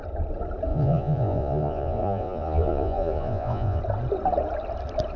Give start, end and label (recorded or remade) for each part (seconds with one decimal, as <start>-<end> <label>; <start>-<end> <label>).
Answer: 0.0-0.7 recorded; 0.7-3.8 remade; 3.8-5.2 recorded